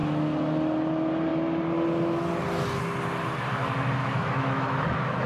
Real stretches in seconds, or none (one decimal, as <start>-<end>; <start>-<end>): 0.0-4.0